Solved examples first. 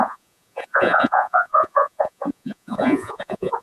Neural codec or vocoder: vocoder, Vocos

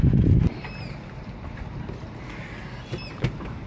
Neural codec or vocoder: none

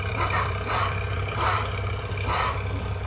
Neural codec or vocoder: vocoder, BigVGAN v2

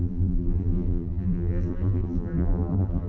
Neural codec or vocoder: vocoder, BigVGAN v2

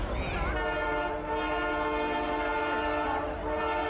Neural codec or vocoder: none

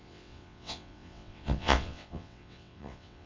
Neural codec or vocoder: vocoder, WaveNeXt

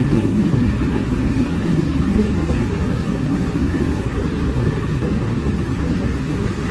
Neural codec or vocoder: codec, SNAC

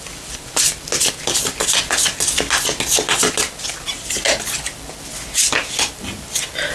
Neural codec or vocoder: none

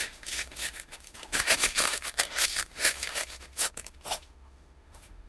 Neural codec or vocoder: autoencoder, DAC-VAE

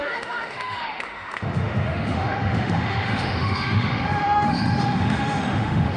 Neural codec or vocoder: autoencoder, DAC-VAE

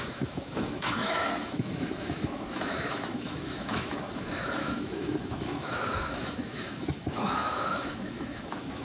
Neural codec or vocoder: autoencoder, DAC-VAE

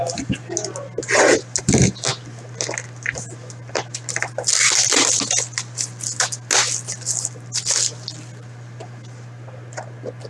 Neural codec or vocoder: none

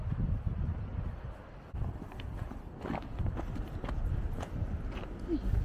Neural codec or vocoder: none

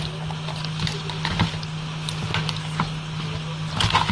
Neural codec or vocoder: none